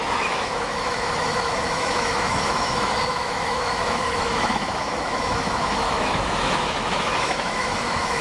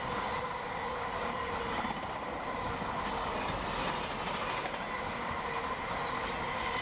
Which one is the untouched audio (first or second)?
second